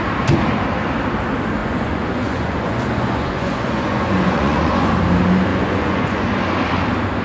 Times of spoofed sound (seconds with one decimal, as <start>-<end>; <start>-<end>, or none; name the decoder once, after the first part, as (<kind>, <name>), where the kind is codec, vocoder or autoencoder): 1.6-4.9 (vocoder, Vocos); 5.5-6.3